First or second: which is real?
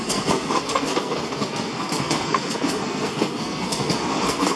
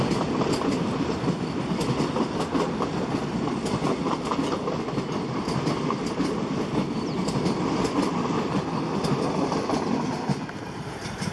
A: second